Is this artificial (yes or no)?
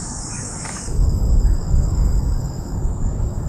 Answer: yes